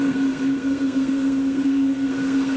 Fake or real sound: fake